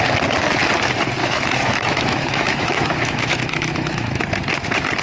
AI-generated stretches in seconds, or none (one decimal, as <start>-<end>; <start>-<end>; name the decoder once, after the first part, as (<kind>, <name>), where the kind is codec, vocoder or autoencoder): 1.2-4.2 (autoencoder, DAC-VAE)